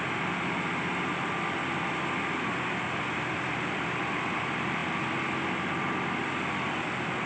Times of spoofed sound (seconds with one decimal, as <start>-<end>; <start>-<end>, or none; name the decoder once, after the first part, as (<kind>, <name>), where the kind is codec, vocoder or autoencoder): none